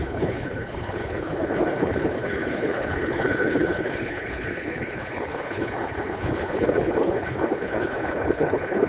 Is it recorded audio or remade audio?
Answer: remade